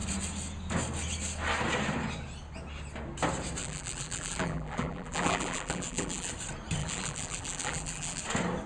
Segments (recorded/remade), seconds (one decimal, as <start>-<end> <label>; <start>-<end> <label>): 0.0-3.6 recorded; 3.6-6.3 remade; 6.3-6.8 recorded; 6.8-8.2 remade; 8.2-8.7 recorded